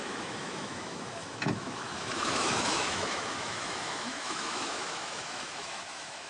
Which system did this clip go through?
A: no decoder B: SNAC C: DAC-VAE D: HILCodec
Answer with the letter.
C